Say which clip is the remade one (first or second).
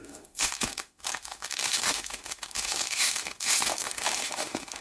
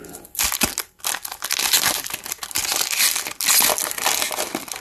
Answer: first